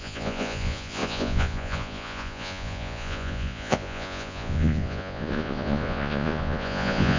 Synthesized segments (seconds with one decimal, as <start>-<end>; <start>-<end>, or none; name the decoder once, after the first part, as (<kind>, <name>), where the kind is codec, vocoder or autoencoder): 0.0-7.2 (vocoder, Vocos)